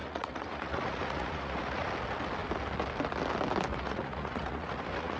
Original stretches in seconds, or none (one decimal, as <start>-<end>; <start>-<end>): 1.9-3.7